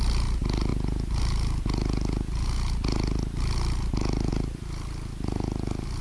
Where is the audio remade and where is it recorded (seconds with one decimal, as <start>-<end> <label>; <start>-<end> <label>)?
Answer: 0.0-6.0 recorded